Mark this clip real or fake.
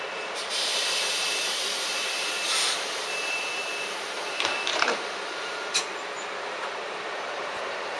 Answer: fake